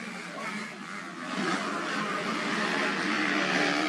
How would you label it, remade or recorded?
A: recorded